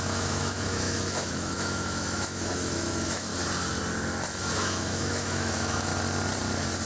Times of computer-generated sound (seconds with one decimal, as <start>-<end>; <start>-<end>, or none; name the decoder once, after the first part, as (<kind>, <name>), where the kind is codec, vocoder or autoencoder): 0.0-3.3 (autoencoder, DAC-VAE); 4.5-5.9